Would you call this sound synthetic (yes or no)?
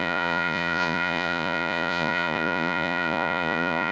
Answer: yes